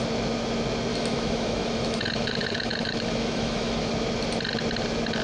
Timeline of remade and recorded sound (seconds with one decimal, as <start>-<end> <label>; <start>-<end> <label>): 0.0-0.9 recorded; 0.9-3.9 remade; 3.9-5.2 recorded